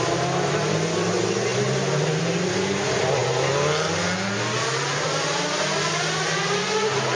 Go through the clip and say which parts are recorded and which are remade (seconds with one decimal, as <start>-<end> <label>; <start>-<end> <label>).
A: 0.0-7.2 recorded